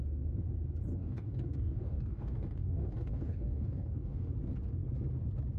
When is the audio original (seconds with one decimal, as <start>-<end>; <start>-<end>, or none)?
0.0-0.9; 4.3-5.6